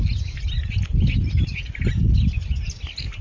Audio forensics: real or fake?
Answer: real